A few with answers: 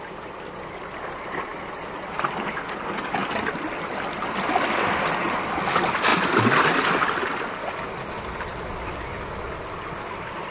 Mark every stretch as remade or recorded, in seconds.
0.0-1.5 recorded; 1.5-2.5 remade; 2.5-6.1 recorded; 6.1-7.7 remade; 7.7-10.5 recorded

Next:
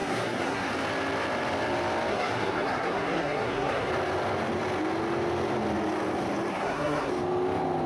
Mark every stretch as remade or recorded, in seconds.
0.0-0.7 remade; 0.7-2.1 recorded; 2.1-3.9 remade; 3.9-6.5 recorded; 6.5-7.1 remade; 7.1-7.9 recorded

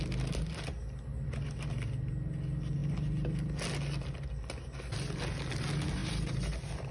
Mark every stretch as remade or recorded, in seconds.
0.0-6.9 recorded

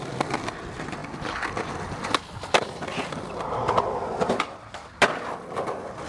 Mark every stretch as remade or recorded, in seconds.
0.0-6.1 recorded

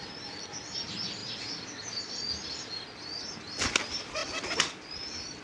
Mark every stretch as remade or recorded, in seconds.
0.0-5.4 remade